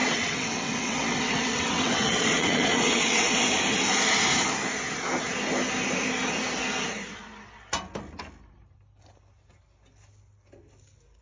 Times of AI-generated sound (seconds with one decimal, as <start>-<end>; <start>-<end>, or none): 0.0-3.5